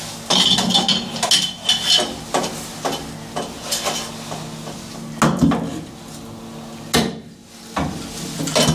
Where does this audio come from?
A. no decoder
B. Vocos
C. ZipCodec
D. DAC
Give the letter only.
A